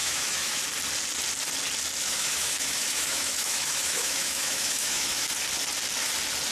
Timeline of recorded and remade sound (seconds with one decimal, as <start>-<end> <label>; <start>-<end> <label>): 0.0-0.6 remade; 0.6-2.0 recorded; 2.0-5.3 remade; 5.3-6.5 recorded